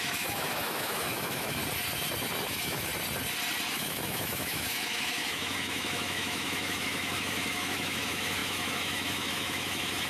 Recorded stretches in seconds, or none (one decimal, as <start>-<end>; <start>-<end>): 1.6-2.4; 2.9-3.7